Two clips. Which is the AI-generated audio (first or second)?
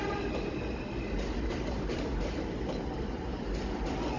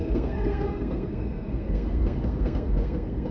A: second